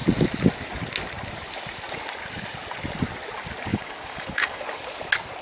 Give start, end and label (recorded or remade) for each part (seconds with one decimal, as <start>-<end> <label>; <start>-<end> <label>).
0.0-3.7 recorded; 3.7-4.6 remade; 4.6-5.4 recorded